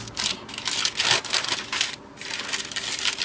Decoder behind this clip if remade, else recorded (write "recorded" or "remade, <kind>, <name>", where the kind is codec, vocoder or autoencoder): recorded